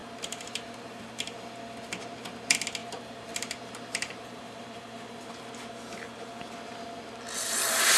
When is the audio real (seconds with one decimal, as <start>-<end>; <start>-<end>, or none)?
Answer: 1.1-2.8; 5.5-8.0